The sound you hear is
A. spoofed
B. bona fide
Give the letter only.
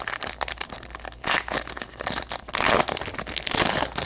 B